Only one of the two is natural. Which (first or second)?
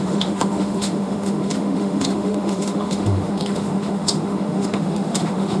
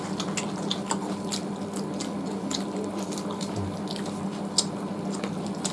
second